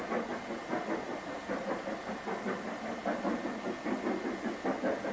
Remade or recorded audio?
recorded